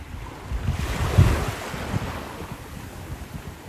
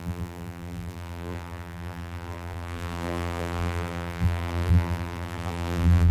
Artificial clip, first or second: second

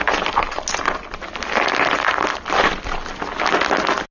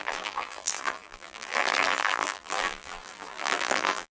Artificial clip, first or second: second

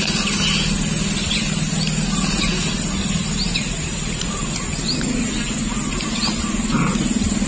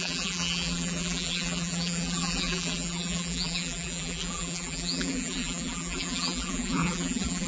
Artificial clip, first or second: second